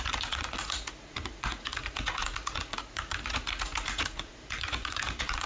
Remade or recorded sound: remade